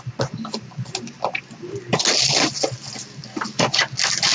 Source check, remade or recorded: recorded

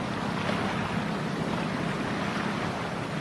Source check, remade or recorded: remade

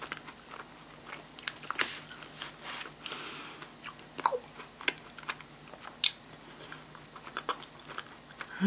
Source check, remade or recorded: recorded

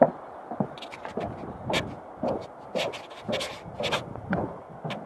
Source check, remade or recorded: recorded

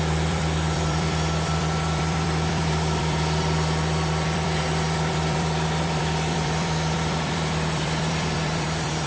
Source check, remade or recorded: remade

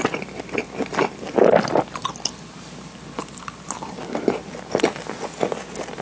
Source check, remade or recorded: recorded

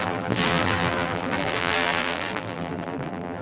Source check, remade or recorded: remade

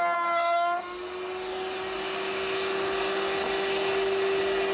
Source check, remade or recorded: recorded